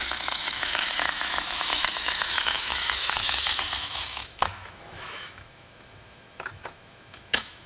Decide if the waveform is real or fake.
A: fake